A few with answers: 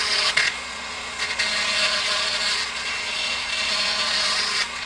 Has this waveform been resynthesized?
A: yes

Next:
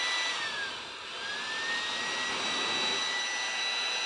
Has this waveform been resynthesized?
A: no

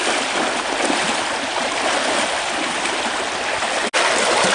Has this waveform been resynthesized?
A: no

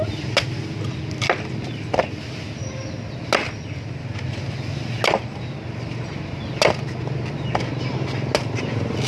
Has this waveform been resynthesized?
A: no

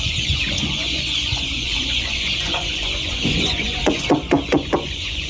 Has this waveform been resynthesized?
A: yes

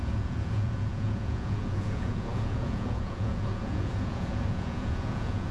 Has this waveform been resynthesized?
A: yes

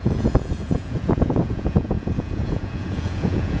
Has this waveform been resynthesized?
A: yes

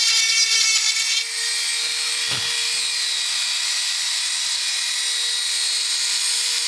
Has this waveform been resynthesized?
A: no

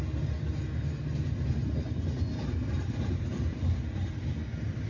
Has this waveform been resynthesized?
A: no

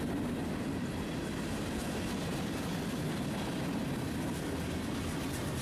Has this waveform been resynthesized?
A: no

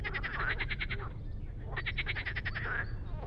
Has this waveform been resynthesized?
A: no